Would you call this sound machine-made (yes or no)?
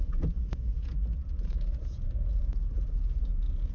yes